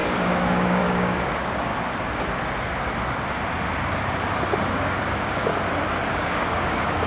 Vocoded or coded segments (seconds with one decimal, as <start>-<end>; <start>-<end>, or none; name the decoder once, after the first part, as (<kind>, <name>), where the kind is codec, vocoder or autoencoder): 0.0-1.7 (codec, DAC); 4.7-5.5; 6.1-7.1